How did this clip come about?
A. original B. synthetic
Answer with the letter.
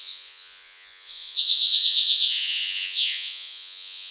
B